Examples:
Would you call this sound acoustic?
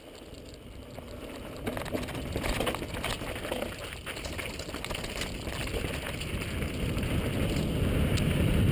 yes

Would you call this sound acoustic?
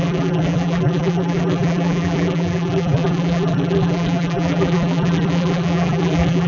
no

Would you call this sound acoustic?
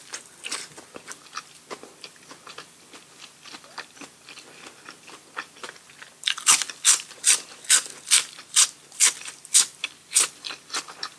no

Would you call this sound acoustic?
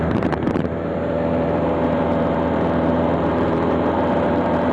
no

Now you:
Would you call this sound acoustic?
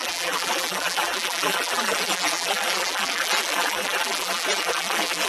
no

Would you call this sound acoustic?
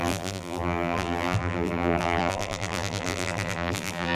no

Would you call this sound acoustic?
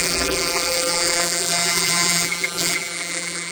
no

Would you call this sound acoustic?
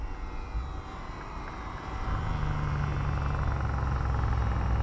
yes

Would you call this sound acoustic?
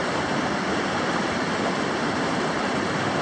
no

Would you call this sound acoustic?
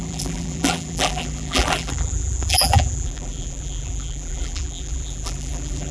no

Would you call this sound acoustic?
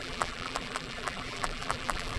no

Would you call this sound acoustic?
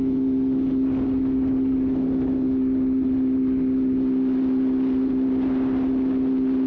yes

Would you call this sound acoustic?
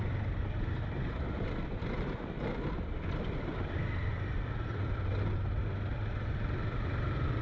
no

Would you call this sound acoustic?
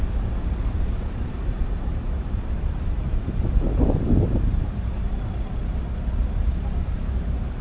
no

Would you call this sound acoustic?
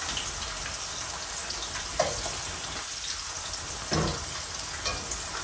yes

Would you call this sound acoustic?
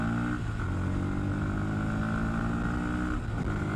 yes